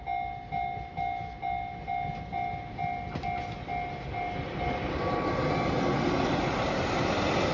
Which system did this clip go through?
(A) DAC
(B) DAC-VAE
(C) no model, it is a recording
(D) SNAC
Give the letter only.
C